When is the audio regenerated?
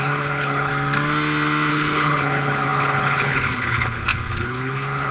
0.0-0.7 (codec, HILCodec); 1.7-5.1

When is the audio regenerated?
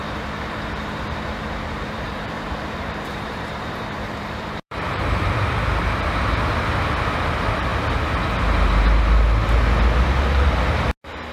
1.1-5.5 (vocoder, BigVGAN v2)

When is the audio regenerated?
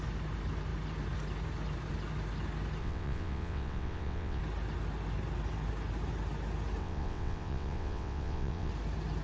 2.8-4.4 (vocoder, WaveNeXt); 6.8-8.7